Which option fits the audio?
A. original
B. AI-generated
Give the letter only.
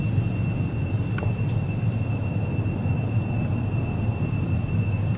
A